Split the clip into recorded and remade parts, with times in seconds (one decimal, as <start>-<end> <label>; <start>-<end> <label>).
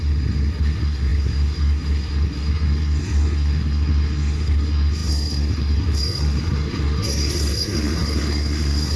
0.0-9.0 remade